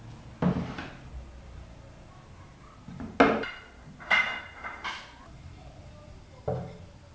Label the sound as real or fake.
real